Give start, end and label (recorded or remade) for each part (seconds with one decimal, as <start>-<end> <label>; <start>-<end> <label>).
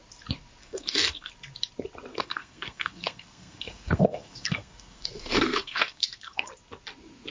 0.0-0.6 recorded; 0.6-1.3 remade; 1.3-2.1 recorded; 2.1-6.5 remade; 6.5-7.3 recorded